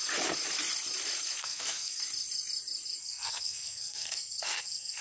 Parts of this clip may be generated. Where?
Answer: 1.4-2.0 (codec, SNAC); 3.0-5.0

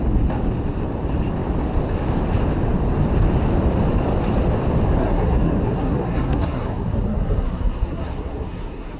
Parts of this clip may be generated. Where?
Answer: 5.0-9.0 (codec, SNAC)